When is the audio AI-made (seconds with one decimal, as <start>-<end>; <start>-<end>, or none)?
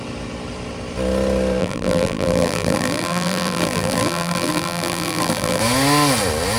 1.6-5.6